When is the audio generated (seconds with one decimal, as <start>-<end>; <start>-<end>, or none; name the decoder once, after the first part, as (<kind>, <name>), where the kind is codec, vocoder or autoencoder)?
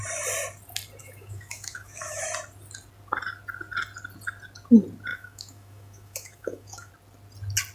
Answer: 1.0-2.2 (autoencoder, DAC-VAE); 5.1-6.9